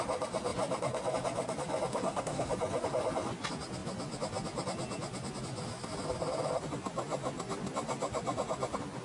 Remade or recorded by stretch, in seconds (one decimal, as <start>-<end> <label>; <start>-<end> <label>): 0.0-1.9 recorded; 1.9-2.5 remade; 2.5-9.0 recorded